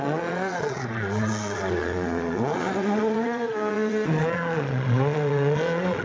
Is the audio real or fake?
fake